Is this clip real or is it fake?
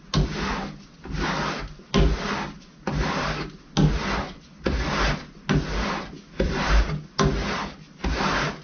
real